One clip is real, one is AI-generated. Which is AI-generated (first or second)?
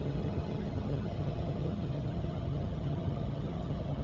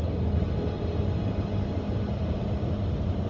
first